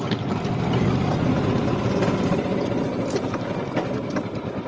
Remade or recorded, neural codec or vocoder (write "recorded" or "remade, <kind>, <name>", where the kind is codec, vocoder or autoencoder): recorded